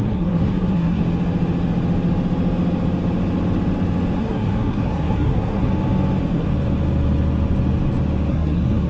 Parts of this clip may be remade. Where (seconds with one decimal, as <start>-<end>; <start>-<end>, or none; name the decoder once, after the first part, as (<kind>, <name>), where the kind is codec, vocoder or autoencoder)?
0.0-1.0 (codec, SNAC); 4.2-5.7; 8.3-8.9